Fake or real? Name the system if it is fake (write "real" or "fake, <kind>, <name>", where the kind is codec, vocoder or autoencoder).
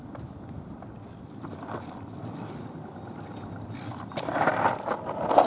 fake, vocoder, BigVGAN v2